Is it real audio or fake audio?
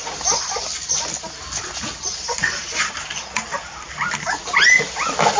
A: fake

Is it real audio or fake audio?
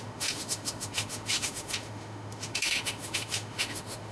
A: fake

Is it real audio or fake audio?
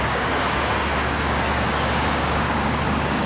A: fake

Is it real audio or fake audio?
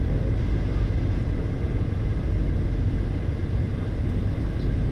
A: real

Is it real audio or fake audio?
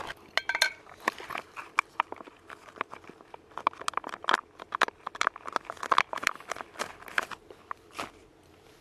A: real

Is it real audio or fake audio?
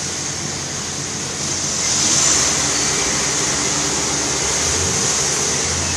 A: real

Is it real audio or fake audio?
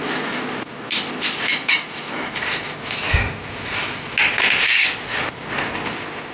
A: real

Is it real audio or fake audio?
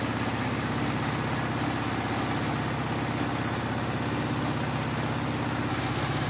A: real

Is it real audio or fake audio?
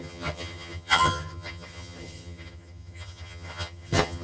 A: fake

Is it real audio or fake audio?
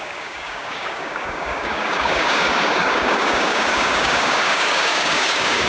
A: fake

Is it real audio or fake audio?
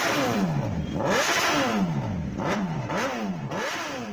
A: fake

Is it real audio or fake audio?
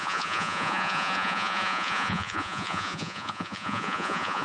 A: fake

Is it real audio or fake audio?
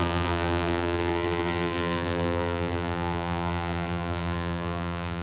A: fake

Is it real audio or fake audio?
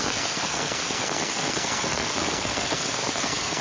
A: fake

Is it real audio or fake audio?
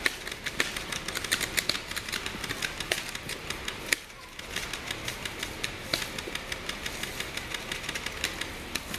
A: real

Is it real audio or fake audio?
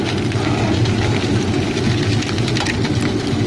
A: real